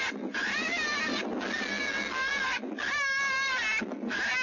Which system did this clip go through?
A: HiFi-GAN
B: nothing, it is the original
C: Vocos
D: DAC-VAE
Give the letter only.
B